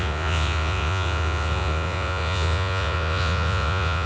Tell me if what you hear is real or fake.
fake